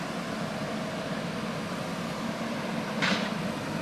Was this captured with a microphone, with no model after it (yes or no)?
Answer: yes